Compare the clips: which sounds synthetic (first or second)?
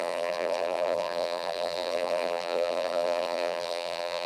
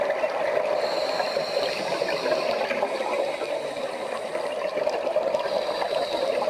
first